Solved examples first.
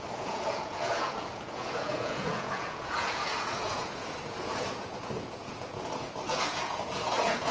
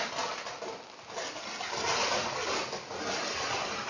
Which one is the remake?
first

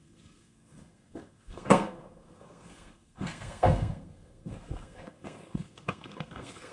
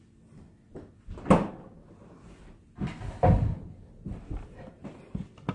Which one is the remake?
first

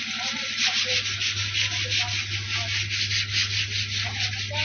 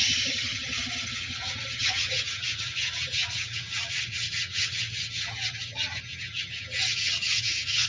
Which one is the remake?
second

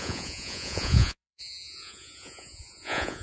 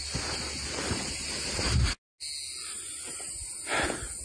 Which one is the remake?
first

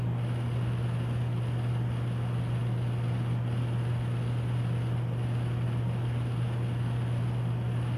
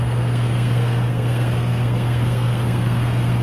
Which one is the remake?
second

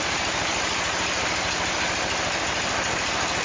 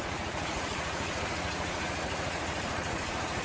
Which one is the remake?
second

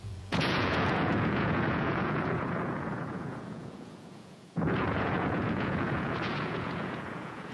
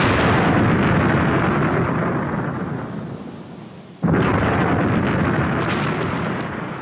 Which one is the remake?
first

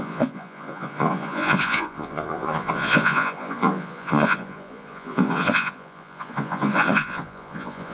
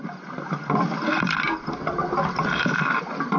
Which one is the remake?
first